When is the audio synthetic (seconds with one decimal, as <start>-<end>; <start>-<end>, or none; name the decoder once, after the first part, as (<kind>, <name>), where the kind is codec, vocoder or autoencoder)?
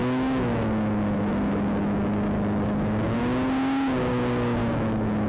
0.0-3.2 (autoencoder, DAC-VAE); 4.6-5.3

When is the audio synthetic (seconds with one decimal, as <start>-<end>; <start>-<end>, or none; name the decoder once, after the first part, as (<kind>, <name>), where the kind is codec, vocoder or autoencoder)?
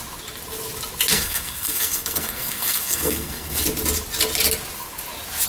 1.1-3.6 (codec, SNAC)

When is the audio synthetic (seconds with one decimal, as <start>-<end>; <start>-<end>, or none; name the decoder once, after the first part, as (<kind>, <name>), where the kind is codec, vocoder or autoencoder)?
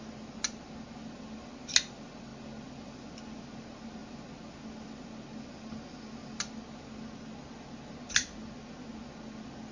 none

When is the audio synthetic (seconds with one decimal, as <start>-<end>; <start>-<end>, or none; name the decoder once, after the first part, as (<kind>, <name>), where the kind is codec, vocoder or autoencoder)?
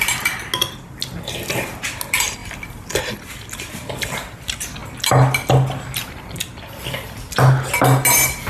none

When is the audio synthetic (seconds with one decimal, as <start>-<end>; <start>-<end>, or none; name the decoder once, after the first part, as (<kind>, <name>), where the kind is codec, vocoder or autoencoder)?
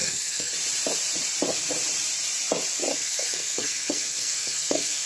0.0-0.5 (codec, SNAC); 2.9-5.1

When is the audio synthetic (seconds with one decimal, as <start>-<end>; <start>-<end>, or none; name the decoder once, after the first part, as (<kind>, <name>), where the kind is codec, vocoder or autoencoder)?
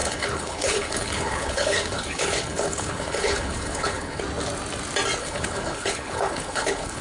0.0-4.2 (codec, HILCodec); 5.2-7.0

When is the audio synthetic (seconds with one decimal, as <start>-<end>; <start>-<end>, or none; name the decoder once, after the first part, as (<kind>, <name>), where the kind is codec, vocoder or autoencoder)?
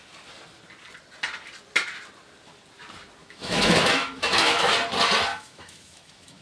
3.2-4.7 (autoencoder, DAC-VAE); 5.3-6.4